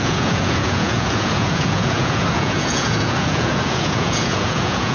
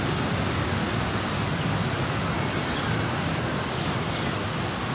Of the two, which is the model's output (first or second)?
first